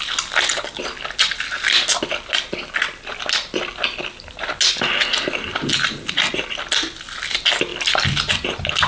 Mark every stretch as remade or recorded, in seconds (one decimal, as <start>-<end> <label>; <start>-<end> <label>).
0.0-8.9 recorded